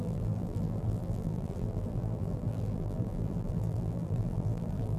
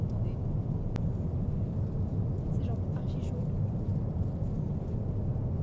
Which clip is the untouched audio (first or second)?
second